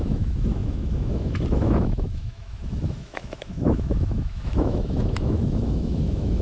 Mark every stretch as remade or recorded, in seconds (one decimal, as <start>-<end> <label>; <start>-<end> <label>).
0.0-6.4 remade